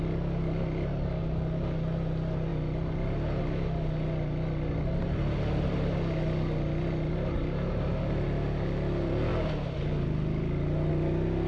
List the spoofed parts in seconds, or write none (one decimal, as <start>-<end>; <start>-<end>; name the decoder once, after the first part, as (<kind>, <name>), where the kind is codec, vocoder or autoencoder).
none